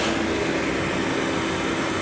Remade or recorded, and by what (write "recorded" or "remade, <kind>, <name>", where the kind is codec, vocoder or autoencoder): recorded